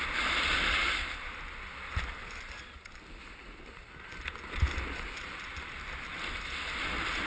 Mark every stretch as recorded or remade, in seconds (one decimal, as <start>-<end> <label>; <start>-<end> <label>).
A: 0.0-7.3 recorded